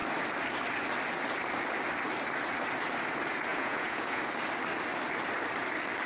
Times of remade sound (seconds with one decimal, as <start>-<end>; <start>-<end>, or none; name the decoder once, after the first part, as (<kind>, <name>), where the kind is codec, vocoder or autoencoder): 3.5-4.2 (vocoder, Vocos)